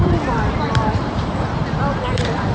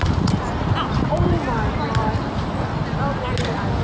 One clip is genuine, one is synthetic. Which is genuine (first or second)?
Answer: second